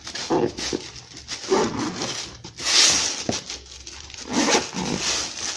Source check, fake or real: real